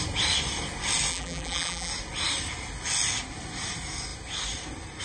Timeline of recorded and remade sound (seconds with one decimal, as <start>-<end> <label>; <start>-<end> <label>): 0.0-1.1 recorded; 1.1-1.9 remade; 1.9-5.0 recorded